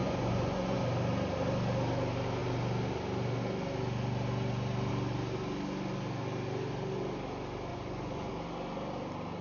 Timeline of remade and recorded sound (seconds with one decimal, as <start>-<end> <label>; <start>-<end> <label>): 0.0-0.8 remade; 0.8-7.7 recorded; 7.7-8.3 remade; 8.3-9.4 recorded